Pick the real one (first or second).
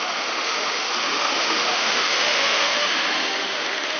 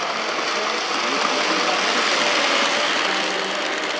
second